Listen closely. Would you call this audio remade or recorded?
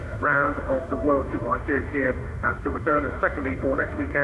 remade